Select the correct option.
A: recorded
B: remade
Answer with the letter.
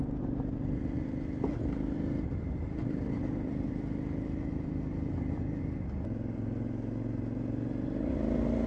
A